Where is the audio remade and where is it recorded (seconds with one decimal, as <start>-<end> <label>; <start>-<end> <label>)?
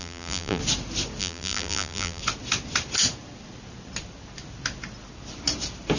0.0-0.6 remade; 0.6-1.2 recorded; 1.2-2.2 remade; 2.2-6.0 recorded